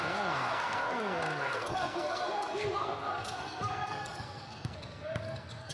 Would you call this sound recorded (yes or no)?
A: no